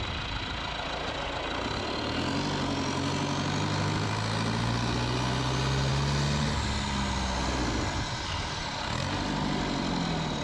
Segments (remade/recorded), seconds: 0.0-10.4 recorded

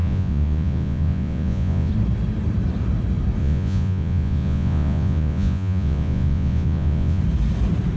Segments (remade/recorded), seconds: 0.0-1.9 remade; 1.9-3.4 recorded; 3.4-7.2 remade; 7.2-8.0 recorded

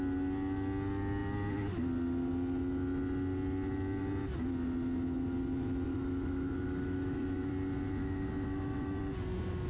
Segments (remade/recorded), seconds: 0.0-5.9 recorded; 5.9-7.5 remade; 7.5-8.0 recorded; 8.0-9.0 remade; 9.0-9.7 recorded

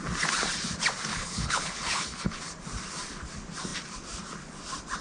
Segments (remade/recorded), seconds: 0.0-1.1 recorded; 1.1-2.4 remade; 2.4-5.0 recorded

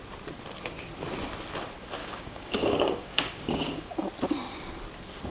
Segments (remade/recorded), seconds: 0.0-2.0 recorded; 2.0-4.1 remade; 4.1-5.3 recorded